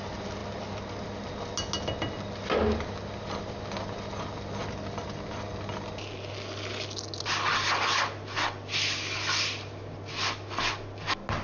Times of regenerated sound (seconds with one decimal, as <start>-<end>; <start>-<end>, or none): none